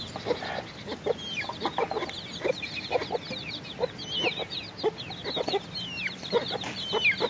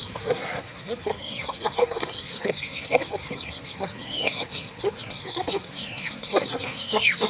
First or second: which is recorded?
first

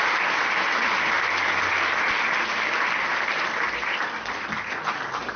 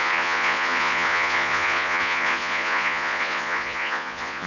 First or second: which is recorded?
first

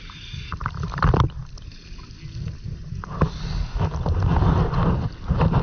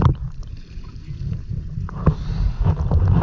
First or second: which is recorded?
first